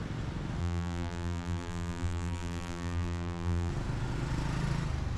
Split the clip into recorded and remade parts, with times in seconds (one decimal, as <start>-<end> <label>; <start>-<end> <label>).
0.0-0.6 recorded; 0.6-3.7 remade; 3.7-5.2 recorded